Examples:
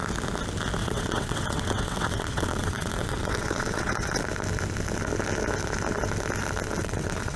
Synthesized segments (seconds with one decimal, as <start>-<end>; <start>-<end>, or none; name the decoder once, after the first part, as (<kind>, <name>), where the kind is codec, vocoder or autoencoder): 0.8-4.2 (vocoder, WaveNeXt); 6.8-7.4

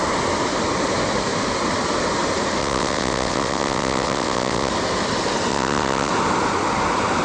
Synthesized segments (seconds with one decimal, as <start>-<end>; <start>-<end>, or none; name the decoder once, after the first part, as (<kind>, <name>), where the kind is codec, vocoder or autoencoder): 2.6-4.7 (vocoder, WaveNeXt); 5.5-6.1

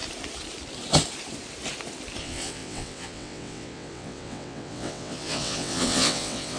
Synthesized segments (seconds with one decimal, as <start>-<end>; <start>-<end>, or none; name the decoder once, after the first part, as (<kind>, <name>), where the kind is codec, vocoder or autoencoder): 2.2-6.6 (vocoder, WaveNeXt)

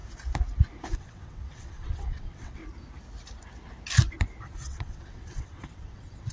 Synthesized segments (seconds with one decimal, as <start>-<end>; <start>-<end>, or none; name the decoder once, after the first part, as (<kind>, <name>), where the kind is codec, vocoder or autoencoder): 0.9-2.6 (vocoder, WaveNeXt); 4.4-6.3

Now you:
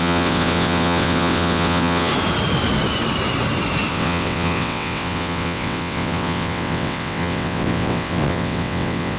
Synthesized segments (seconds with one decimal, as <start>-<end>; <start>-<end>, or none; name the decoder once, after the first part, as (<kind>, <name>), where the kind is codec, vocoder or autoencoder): 0.0-2.1 (vocoder, WaveNeXt); 3.9-9.2

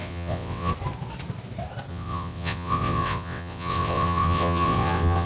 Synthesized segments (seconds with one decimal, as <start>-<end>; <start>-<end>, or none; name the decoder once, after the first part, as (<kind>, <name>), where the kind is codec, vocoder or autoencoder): 0.0-0.7 (vocoder, WaveNeXt); 1.9-5.3

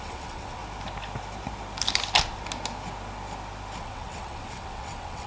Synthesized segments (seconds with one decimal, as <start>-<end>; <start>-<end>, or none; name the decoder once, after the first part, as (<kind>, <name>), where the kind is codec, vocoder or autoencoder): 0.0-0.6 (vocoder, WaveNeXt); 3.8-5.3

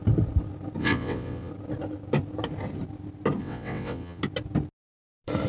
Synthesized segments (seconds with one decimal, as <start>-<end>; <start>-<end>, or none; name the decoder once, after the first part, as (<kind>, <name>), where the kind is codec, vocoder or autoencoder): 0.8-1.5 (vocoder, WaveNeXt); 3.4-4.2